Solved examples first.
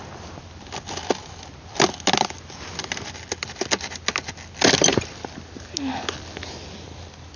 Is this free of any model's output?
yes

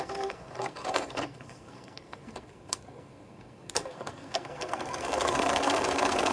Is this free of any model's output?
no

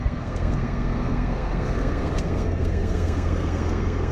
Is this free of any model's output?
no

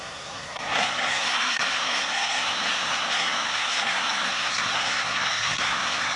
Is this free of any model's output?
no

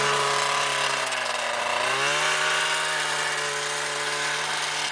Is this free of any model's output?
yes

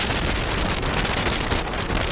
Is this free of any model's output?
yes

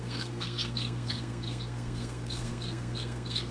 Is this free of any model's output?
no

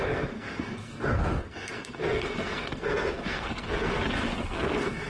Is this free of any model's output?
no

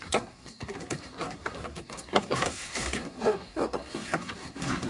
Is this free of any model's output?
no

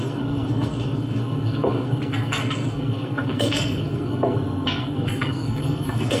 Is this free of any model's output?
no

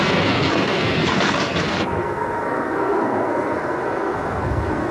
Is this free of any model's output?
no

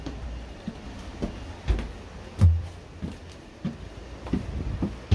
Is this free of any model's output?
yes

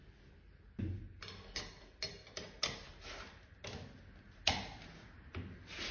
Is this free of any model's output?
yes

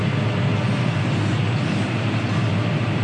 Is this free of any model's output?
yes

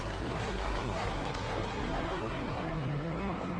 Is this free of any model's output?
no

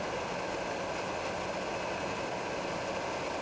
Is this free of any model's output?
yes